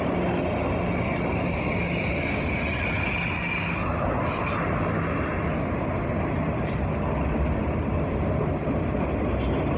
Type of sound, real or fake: real